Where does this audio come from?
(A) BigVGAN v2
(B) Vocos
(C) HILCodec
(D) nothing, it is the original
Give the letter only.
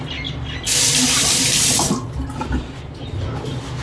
D